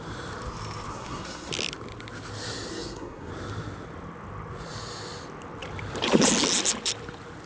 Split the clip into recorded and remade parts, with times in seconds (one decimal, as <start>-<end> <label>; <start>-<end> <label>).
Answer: 0.0-0.9 recorded; 0.9-1.5 remade; 1.5-2.7 recorded; 2.7-3.3 remade; 3.3-7.5 recorded